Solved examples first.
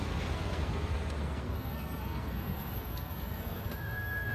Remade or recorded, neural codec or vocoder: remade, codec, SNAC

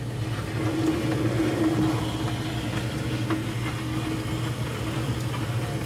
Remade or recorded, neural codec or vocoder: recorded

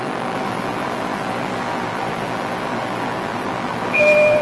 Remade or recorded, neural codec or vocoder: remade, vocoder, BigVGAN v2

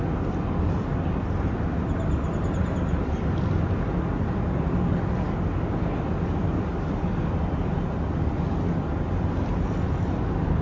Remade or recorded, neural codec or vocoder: recorded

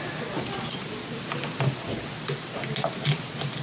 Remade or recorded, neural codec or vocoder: recorded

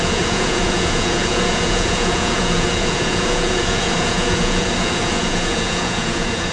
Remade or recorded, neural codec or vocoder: remade, vocoder, Vocos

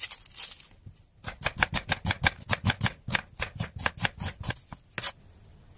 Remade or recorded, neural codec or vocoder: recorded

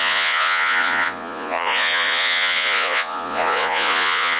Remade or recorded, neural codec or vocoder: remade, vocoder, Vocos